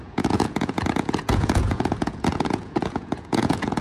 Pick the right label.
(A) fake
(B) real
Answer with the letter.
A